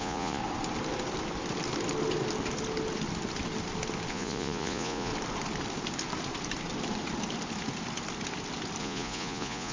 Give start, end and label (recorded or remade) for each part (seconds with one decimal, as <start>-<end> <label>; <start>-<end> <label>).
0.0-0.4 remade; 0.4-4.1 recorded; 4.1-5.1 remade; 5.1-8.8 recorded; 8.8-9.7 remade